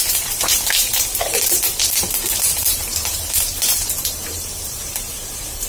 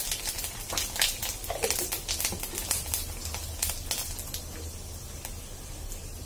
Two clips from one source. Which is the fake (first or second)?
first